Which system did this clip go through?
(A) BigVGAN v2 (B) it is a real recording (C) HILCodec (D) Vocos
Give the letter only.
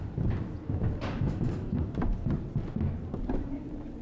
B